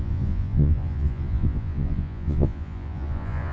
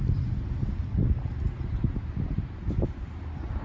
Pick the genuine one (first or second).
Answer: second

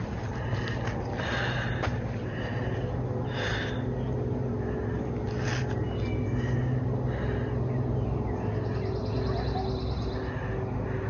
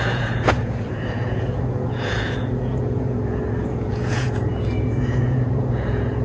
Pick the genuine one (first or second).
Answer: first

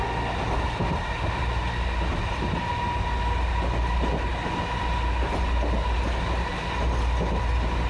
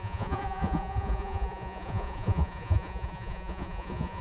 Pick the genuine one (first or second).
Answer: first